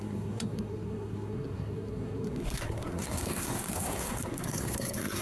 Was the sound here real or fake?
fake